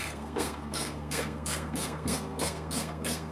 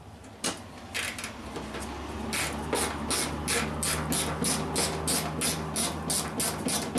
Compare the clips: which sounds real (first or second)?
second